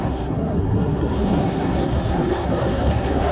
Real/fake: fake